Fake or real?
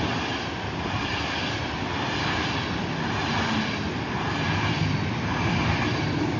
real